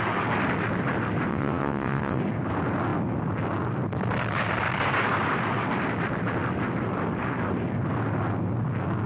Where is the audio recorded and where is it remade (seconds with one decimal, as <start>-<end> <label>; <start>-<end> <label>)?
0.0-1.3 recorded; 1.3-2.2 remade; 2.2-9.1 recorded

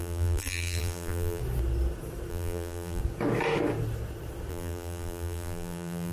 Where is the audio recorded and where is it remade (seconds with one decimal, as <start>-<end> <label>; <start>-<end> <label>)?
0.0-1.4 remade; 1.4-2.3 recorded; 2.3-3.0 remade; 3.0-4.5 recorded; 4.5-6.1 remade

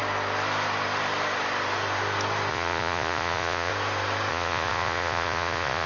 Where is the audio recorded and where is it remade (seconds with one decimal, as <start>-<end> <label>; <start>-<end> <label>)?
0.0-2.5 recorded; 2.5-3.7 remade; 3.7-4.3 recorded; 4.3-5.9 remade

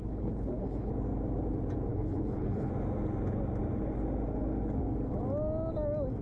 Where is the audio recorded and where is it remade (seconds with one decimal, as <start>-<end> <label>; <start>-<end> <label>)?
0.0-0.9 remade; 0.9-1.9 recorded; 1.9-2.7 remade; 2.7-6.2 recorded

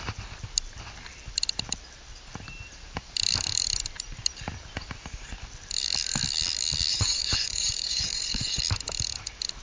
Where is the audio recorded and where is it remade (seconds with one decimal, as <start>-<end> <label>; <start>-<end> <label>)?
0.0-6.9 recorded; 6.9-8.6 remade; 8.6-9.6 recorded